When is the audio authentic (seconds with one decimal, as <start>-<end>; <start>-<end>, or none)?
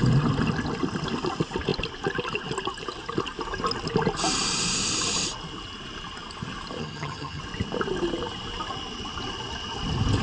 0.0-6.8; 7.4-10.2